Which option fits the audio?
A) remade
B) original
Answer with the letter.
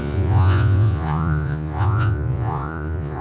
A